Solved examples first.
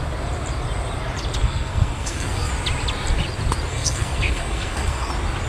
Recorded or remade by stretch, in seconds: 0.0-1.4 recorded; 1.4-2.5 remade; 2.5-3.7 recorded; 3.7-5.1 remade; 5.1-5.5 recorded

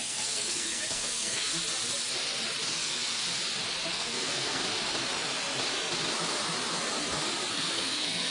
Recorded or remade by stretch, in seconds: 0.0-1.5 remade; 1.5-2.8 recorded; 2.8-3.2 remade; 3.2-3.9 recorded; 3.9-4.6 remade; 4.6-7.5 recorded; 7.5-8.3 remade

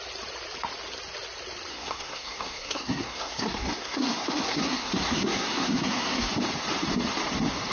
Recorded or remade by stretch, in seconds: 0.0-1.7 recorded; 1.7-6.3 remade; 6.3-7.7 recorded